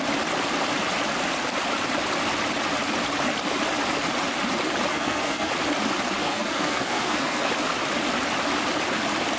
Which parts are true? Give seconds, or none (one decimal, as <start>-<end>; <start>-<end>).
0.0-4.9; 5.5-6.2; 7.5-9.4